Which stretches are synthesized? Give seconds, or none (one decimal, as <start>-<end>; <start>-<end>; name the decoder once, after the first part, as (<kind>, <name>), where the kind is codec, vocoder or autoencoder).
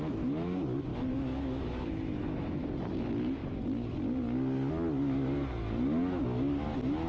0.9-2.6 (autoencoder, DAC-VAE)